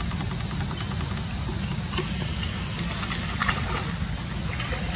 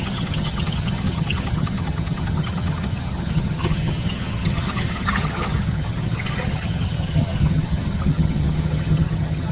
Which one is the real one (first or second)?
first